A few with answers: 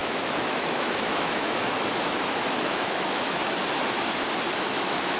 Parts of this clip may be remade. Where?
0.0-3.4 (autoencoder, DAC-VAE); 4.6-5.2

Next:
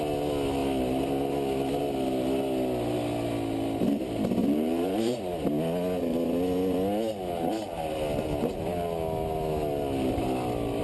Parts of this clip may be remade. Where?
4.4-5.2 (vocoder, BigVGAN v2)